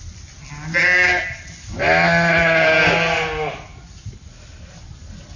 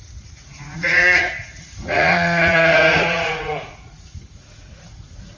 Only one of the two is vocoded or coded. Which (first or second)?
second